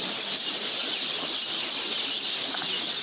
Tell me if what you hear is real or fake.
real